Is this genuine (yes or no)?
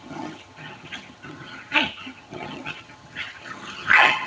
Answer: no